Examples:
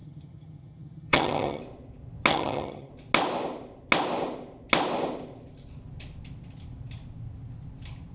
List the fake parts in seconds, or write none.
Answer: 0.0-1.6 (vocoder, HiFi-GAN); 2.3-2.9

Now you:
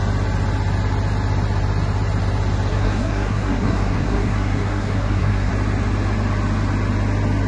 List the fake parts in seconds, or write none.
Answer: 2.7-5.5 (codec, SNAC)

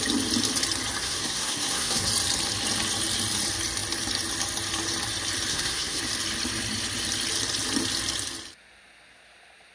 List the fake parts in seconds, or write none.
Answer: 1.0-2.1 (codec, SNAC); 5.5-6.0